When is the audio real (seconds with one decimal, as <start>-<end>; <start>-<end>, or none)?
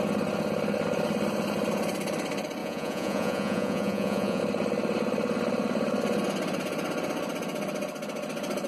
0.0-2.6; 4.4-8.7